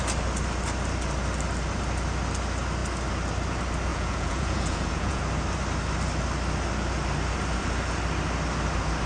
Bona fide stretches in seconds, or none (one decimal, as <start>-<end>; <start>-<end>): 0.0-3.9; 5.2-9.1